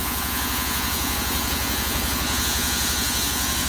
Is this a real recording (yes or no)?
no